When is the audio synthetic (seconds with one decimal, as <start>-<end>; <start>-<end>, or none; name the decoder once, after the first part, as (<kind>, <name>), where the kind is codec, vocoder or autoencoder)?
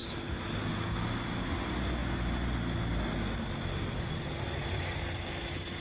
none